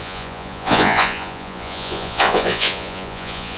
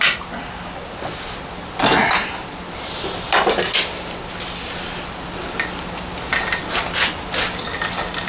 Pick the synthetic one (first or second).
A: first